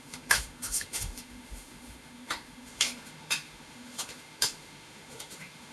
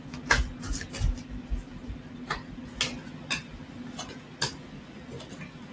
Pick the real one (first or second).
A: second